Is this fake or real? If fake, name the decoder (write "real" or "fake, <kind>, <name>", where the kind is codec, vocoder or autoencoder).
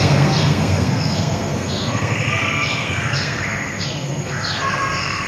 fake, codec, SNAC